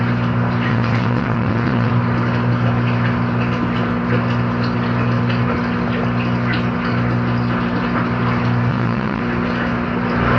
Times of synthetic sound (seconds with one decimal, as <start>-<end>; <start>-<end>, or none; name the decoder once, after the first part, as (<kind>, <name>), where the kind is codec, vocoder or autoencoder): 0.7-1.9 (vocoder, WaveNeXt); 8.7-9.2